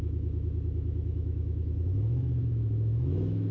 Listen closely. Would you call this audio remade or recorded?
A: remade